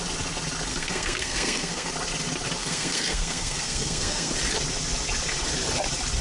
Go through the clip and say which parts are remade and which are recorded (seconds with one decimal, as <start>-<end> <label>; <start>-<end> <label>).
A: 0.0-0.7 recorded; 0.7-1.9 remade; 1.9-2.6 recorded; 2.6-4.3 remade; 4.3-6.2 recorded